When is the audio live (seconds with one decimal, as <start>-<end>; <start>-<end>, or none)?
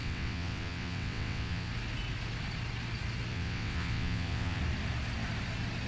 1.7-3.3; 4.6-5.9